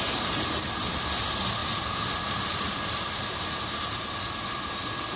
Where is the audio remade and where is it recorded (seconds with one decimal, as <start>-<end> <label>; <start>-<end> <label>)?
0.0-1.6 recorded; 1.6-4.2 remade; 4.2-5.2 recorded